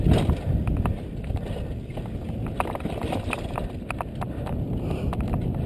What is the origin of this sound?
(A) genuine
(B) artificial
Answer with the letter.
A